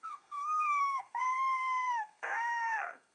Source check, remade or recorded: remade